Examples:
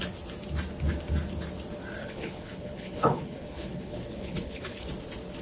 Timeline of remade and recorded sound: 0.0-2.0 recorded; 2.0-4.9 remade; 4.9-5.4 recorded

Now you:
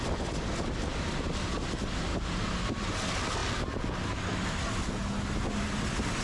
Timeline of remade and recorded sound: 0.0-6.2 recorded

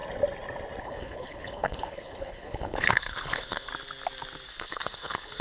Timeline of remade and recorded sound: 0.0-0.8 recorded; 0.8-3.7 remade; 3.7-4.5 recorded; 4.5-5.4 remade

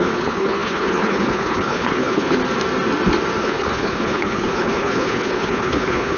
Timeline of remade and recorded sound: 0.0-2.4 remade; 2.4-3.4 recorded; 3.4-6.2 remade

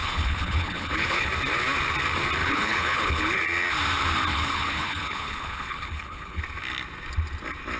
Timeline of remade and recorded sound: 0.0-1.3 remade; 1.3-2.4 recorded; 2.4-3.4 remade; 3.4-4.3 recorded; 4.3-6.4 remade; 6.4-7.8 recorded

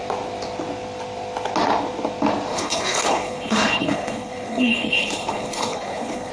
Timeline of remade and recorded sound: 0.0-2.5 recorded; 2.5-6.3 remade

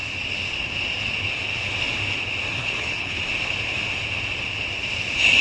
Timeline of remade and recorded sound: 0.0-2.6 recorded; 2.6-3.2 remade; 3.2-5.4 recorded

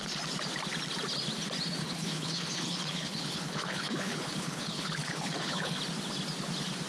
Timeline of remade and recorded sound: 0.0-1.8 recorded; 1.8-5.8 remade; 5.8-6.9 recorded